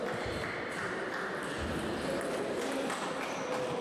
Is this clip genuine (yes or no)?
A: yes